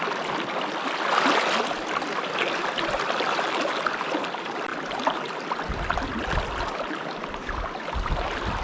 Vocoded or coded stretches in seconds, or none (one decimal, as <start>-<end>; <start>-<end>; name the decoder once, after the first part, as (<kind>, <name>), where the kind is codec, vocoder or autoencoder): none